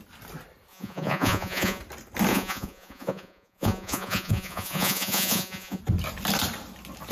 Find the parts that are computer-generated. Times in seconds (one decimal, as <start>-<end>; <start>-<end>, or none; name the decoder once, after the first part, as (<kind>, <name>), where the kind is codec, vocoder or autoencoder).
0.7-1.8 (vocoder, Vocos); 2.3-5.8